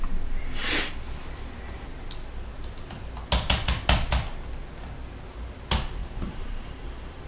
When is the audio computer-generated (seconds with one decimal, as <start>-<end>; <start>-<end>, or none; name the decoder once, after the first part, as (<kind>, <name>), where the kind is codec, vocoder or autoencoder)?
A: 6.0-7.3 (vocoder, BigVGAN v2)